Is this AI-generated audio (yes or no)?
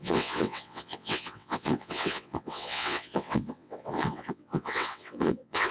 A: yes